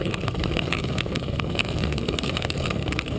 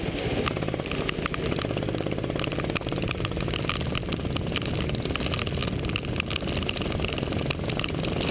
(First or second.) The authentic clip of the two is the second